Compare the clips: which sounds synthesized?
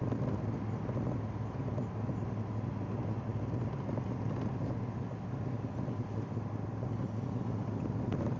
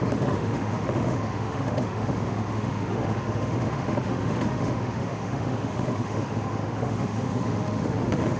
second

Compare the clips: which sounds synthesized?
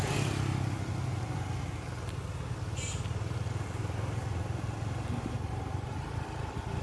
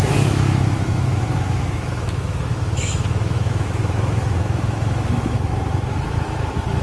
second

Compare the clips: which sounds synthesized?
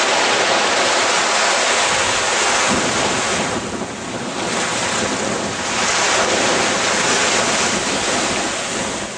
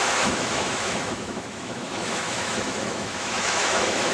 second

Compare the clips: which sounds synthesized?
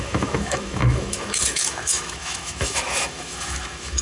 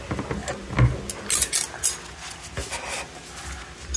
first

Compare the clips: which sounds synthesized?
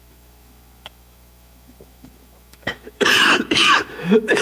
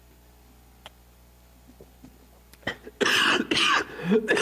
first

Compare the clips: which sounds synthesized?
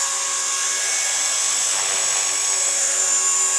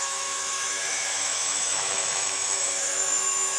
second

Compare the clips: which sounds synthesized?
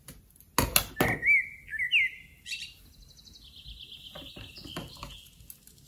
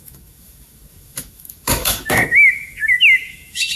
second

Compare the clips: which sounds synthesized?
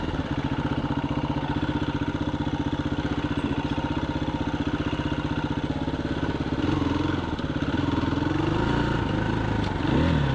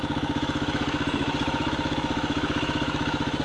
second